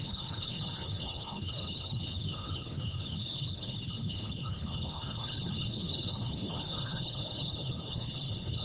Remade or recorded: remade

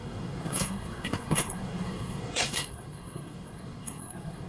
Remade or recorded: remade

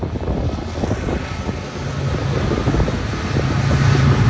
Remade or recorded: recorded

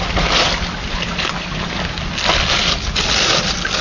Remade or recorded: recorded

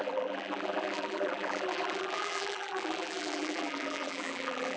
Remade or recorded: remade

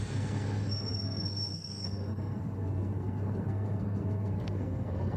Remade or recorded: remade